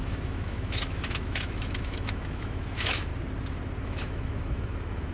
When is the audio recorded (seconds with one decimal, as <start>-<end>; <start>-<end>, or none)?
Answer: 3.1-3.8